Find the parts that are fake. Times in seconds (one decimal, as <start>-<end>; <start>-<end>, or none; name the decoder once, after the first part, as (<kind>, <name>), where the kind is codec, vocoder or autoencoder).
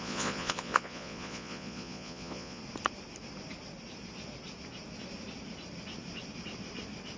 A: 0.0-2.6 (vocoder, Vocos)